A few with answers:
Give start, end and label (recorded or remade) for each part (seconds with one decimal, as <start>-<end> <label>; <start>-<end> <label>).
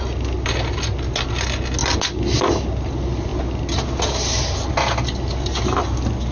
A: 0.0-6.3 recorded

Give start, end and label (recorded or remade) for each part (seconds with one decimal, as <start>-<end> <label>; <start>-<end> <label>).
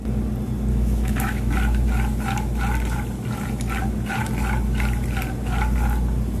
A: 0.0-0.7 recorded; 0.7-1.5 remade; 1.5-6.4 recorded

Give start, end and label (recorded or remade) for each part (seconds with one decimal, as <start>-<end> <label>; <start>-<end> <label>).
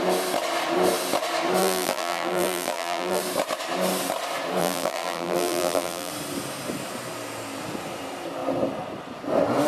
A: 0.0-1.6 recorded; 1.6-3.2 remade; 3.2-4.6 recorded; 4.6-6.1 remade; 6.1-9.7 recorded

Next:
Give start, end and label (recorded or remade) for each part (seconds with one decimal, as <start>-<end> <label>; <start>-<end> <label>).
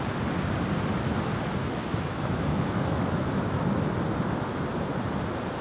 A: 0.0-1.6 recorded; 1.6-3.3 remade; 3.3-5.6 recorded